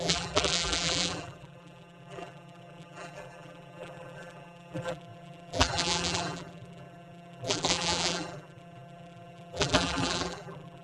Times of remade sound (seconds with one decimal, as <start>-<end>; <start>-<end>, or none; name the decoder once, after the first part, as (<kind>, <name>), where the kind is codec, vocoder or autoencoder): 0.0-10.8 (vocoder, BigVGAN v2)